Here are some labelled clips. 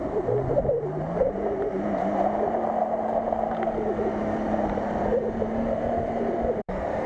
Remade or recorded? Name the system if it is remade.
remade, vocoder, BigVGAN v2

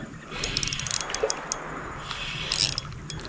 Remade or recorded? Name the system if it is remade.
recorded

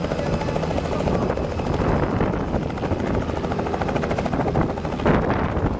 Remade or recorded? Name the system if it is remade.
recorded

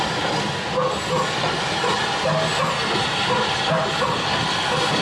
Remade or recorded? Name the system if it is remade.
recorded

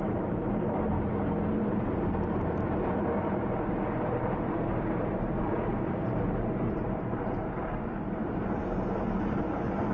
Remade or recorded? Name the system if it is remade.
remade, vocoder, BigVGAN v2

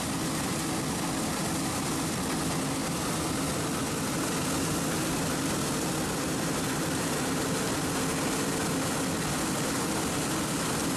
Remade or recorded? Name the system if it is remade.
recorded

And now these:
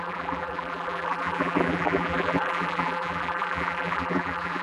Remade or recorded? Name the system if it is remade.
remade, vocoder, BigVGAN v2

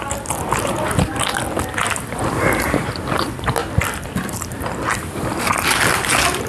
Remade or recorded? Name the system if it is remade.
remade, vocoder, BigVGAN v2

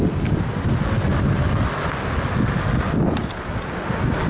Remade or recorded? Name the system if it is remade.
recorded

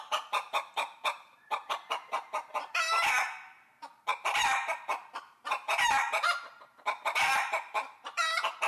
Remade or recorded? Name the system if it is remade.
remade, vocoder, BigVGAN v2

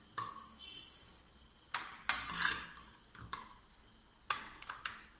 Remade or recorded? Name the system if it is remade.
recorded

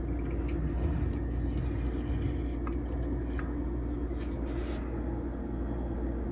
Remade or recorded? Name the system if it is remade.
recorded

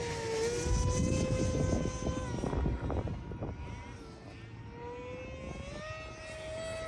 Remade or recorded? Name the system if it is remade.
recorded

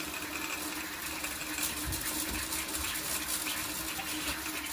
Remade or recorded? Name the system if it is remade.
recorded